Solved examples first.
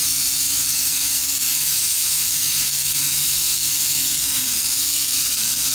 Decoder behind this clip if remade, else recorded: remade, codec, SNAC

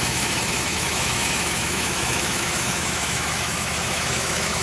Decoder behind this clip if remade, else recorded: remade, autoencoder, DAC-VAE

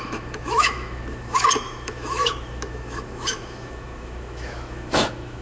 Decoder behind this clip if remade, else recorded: remade, autoencoder, DAC-VAE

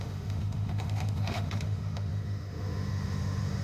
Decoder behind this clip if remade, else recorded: remade, autoencoder, DAC-VAE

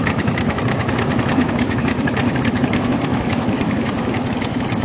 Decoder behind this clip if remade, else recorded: remade, autoencoder, DAC-VAE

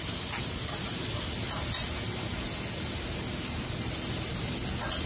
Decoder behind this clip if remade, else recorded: recorded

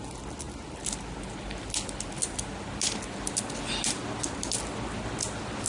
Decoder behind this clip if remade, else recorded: recorded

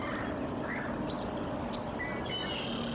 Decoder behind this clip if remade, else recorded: recorded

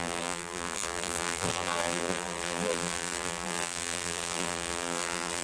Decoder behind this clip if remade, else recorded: remade, vocoder, BigVGAN v2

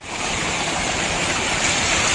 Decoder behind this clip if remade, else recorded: recorded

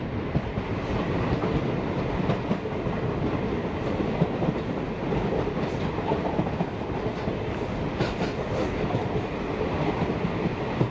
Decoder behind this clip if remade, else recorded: recorded